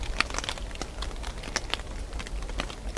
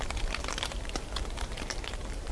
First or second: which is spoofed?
second